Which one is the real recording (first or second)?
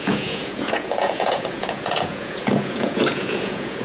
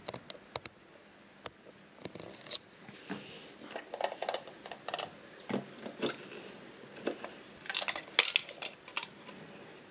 second